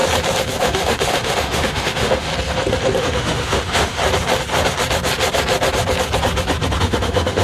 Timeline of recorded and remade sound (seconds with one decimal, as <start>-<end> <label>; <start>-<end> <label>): 0.0-0.6 recorded; 0.6-2.3 remade; 2.3-3.0 recorded; 3.0-4.0 remade; 4.0-6.8 recorded; 6.8-7.4 remade